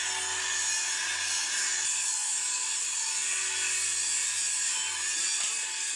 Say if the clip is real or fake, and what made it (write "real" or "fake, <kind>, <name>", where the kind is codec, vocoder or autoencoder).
real